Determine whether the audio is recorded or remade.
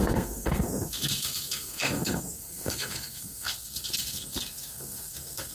remade